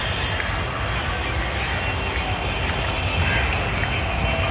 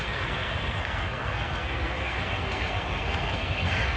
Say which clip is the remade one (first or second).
second